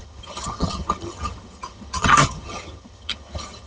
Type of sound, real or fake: fake